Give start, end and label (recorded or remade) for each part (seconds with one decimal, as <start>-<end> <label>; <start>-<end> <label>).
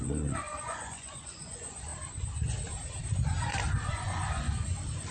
0.0-1.9 remade; 1.9-3.7 recorded; 3.7-5.1 remade